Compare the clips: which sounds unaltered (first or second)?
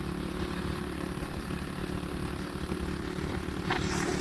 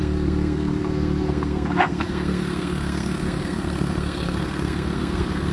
first